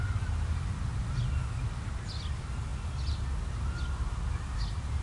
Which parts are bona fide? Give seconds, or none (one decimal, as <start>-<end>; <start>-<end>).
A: 0.0-5.0